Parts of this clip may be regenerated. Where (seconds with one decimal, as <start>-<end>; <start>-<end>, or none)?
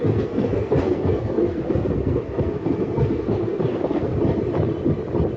0.0-4.1